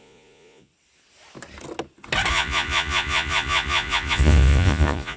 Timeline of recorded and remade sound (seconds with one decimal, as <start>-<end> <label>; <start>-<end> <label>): 0.0-0.7 remade; 0.7-2.3 recorded; 2.3-5.2 remade